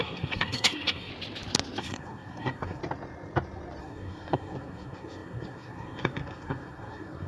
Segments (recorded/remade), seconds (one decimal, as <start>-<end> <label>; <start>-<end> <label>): 0.0-1.1 remade; 1.1-1.8 recorded; 1.8-2.8 remade; 2.8-3.8 recorded; 3.8-7.3 remade